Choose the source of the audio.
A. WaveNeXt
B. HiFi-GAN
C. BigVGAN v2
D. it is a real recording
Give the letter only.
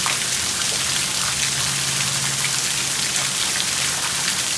D